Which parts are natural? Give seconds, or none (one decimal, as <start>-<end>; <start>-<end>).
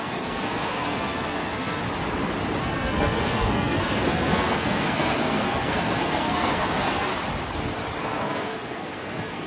1.8-2.6; 7.1-8.0